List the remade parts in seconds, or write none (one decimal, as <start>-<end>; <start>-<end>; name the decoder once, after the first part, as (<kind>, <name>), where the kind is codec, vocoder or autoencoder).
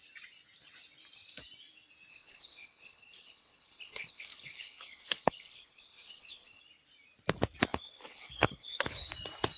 2.1-6.6 (codec, HILCodec); 7.7-9.1